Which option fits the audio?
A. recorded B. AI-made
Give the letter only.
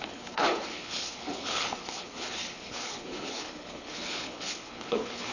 B